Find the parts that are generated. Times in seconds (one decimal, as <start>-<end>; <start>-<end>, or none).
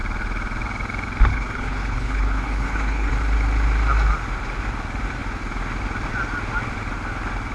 1.3-3.1